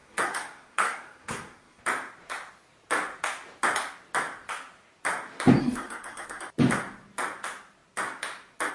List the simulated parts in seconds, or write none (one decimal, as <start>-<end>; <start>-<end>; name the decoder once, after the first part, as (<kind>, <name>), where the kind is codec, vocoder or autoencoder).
0.0-1.8 (codec, SNAC); 5.6-6.4